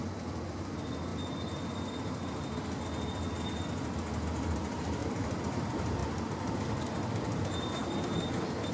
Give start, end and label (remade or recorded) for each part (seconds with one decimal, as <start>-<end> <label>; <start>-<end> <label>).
0.0-5.0 recorded; 5.0-5.6 remade; 5.6-6.0 recorded; 6.0-6.8 remade; 6.8-8.7 recorded